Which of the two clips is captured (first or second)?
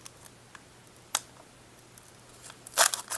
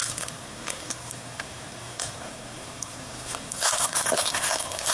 first